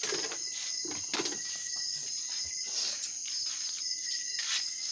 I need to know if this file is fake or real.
real